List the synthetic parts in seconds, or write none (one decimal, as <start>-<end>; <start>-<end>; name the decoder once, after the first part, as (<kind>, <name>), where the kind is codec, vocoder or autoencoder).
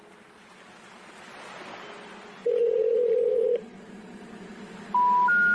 2.4-3.8 (vocoder, Vocos)